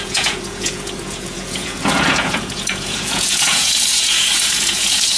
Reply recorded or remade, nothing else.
remade